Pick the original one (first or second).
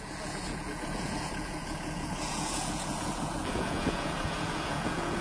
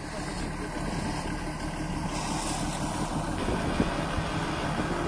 second